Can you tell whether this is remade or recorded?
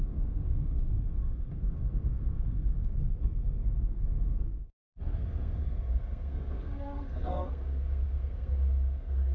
remade